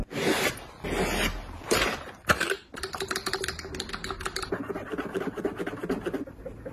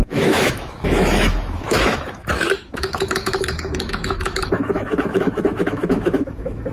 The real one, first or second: first